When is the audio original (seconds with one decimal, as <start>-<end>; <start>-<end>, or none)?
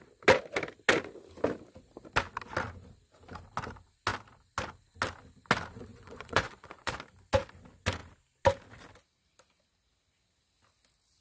0.0-5.9; 6.9-11.2